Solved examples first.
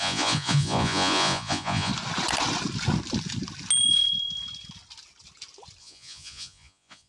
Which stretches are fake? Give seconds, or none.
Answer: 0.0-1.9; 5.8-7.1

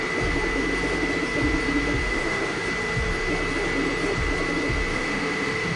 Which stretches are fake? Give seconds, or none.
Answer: 2.1-2.6; 4.9-5.8

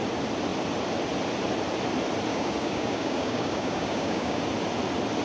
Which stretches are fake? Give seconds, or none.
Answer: 2.3-4.4

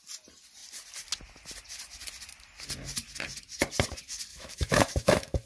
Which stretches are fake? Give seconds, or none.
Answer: 4.3-5.5

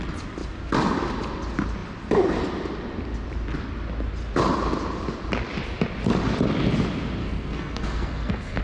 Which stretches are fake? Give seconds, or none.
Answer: 7.2-8.6

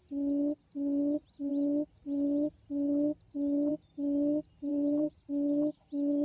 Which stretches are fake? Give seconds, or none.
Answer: 4.7-5.3

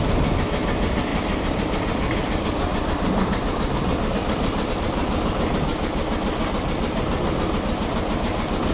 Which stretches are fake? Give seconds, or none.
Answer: 1.1-4.7